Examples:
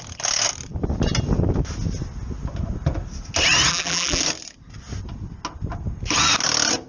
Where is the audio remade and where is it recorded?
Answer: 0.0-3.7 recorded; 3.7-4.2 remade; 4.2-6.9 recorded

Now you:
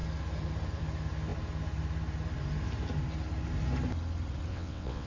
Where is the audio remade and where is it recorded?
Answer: 0.0-4.5 recorded; 4.5-5.1 remade

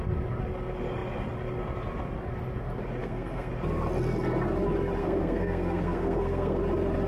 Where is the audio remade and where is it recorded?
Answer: 0.0-3.0 recorded; 3.0-3.5 remade; 3.5-5.0 recorded; 5.0-6.6 remade; 6.6-7.1 recorded

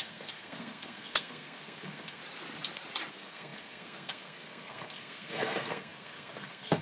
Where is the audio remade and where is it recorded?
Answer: 0.0-2.2 remade; 2.2-3.1 recorded; 3.1-6.8 remade

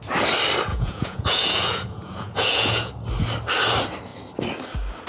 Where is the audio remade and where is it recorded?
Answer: 0.0-0.7 recorded; 0.7-2.9 remade; 2.9-5.1 recorded